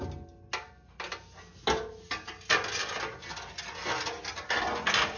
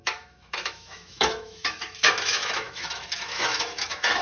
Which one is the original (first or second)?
first